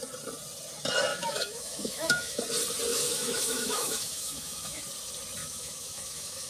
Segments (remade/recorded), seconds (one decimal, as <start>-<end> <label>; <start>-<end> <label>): 0.0-1.1 recorded; 1.1-2.4 remade; 2.4-2.9 recorded; 2.9-4.8 remade; 4.8-5.4 recorded; 5.4-6.5 remade